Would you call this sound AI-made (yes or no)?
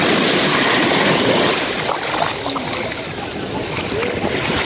no